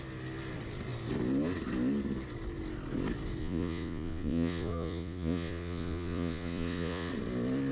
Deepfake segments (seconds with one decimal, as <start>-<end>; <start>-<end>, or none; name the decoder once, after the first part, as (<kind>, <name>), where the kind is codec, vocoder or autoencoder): 3.4-7.1 (vocoder, Vocos)